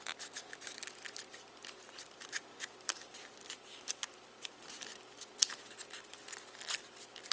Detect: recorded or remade recorded